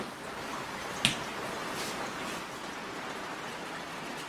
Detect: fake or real real